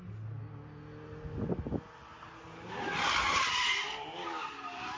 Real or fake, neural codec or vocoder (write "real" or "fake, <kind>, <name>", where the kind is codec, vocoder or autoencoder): real